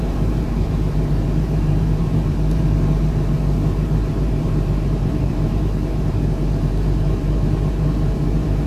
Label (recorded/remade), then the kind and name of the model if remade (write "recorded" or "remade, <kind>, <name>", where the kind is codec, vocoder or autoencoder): remade, vocoder, BigVGAN v2